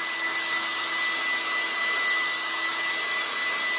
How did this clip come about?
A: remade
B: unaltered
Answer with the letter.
B